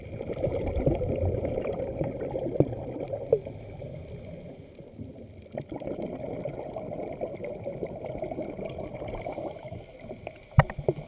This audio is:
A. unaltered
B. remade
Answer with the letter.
B